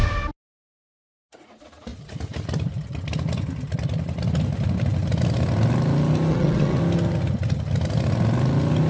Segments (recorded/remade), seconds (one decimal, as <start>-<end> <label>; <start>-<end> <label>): 0.0-6.3 recorded; 6.3-6.8 remade; 6.8-8.9 recorded